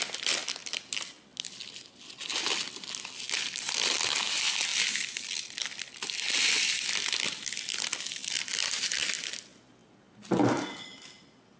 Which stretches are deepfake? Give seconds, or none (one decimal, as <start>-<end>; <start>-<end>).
none